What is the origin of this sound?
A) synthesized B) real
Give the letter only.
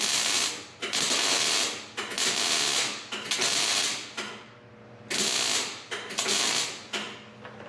B